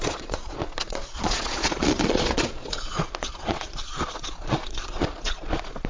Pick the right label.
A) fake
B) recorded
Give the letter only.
A